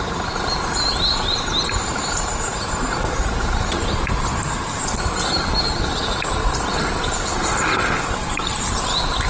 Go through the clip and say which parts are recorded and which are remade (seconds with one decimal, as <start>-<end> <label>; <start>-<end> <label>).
0.0-9.3 recorded